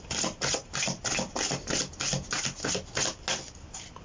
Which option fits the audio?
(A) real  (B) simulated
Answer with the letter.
A